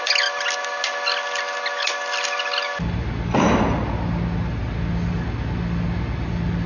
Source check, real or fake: real